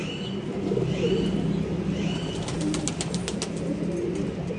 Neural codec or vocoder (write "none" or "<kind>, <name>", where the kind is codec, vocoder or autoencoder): none